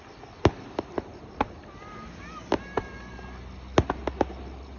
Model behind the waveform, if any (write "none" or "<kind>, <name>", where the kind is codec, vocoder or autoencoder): none